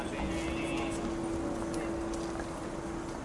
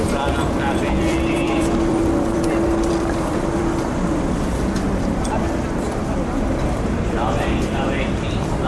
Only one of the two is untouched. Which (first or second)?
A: first